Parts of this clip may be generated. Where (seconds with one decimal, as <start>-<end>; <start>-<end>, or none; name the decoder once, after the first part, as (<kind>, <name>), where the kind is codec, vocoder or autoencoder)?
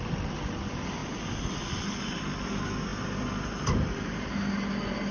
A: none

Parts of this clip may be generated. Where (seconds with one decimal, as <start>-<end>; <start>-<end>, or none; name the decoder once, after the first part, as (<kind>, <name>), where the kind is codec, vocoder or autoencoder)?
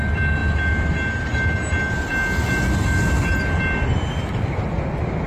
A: none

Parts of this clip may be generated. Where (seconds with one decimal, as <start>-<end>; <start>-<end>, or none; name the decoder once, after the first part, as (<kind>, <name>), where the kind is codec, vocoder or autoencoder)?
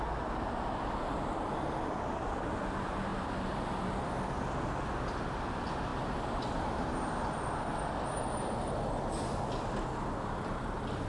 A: none